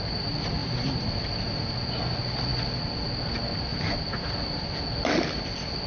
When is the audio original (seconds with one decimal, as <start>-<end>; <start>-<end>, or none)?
0.0-0.6; 1.3-3.7; 4.7-5.9